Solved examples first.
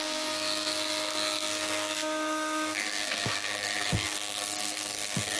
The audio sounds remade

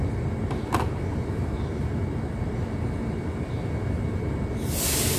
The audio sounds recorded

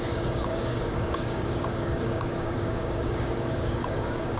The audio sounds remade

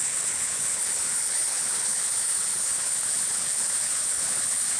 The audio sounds remade